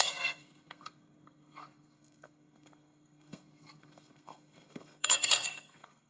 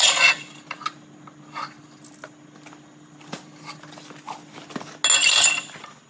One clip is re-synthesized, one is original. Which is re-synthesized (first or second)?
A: first